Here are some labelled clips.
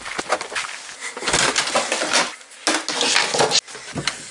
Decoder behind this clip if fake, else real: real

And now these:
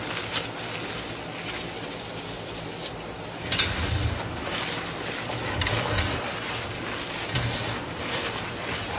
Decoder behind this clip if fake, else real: real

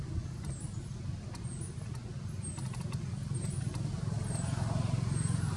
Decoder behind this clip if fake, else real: real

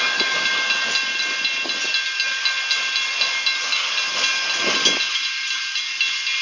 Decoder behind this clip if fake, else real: real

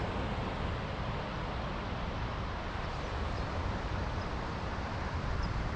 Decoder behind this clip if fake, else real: fake, vocoder, BigVGAN v2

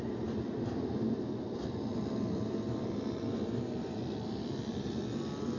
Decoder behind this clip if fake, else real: real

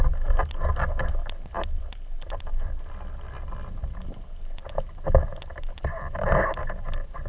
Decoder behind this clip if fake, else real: real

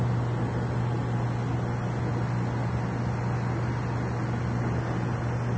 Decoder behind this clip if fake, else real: real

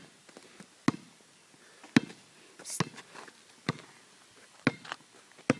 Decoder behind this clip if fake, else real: real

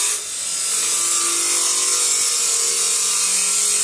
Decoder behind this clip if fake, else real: real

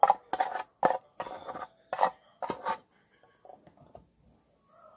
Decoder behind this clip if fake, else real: real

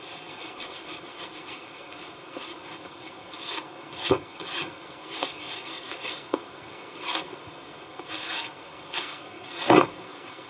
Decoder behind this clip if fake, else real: fake, codec, SNAC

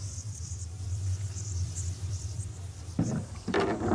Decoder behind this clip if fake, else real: fake, vocoder, BigVGAN v2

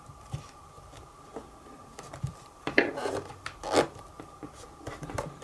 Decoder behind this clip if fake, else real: fake, vocoder, BigVGAN v2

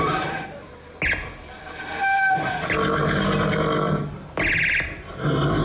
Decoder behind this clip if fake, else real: real